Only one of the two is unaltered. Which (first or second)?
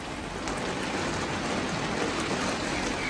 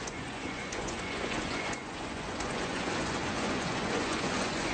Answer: first